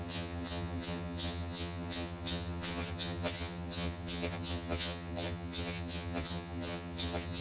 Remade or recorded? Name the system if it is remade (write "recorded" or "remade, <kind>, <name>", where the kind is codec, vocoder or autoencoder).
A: remade, vocoder, HiFi-GAN